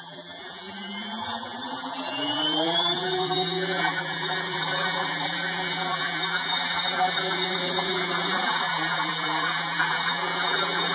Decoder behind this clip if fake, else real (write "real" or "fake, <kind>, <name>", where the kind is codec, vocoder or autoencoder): fake, vocoder, BigVGAN v2